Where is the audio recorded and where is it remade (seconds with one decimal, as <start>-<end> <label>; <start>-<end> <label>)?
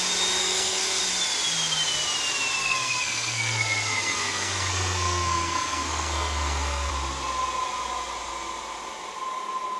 0.0-0.4 recorded; 0.4-1.0 remade; 1.0-2.6 recorded; 2.6-6.9 remade; 6.9-9.8 recorded